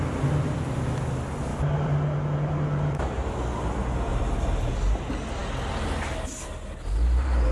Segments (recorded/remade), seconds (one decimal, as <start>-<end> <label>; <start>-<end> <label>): 0.0-1.5 recorded; 1.5-3.3 remade; 3.3-4.1 recorded; 4.1-4.7 remade; 4.7-7.5 recorded